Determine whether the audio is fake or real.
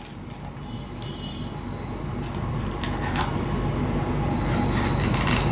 real